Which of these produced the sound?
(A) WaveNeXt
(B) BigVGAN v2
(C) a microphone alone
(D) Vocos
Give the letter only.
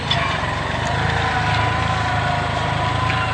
C